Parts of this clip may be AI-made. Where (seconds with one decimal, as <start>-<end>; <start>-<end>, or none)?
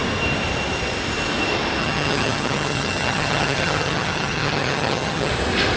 1.8-5.3